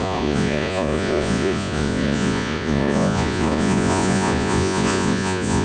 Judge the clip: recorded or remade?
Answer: remade